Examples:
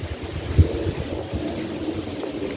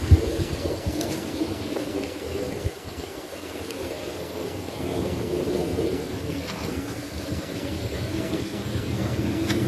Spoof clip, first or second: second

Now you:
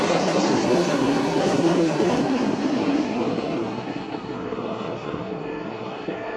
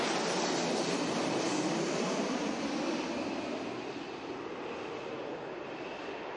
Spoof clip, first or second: first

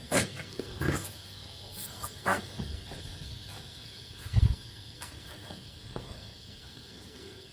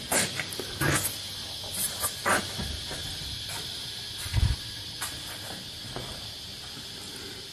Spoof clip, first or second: first